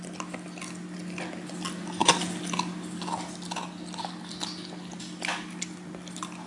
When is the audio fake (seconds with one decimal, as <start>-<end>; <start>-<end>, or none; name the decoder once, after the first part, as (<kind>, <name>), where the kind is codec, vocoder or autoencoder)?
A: none